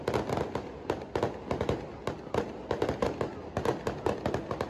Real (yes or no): yes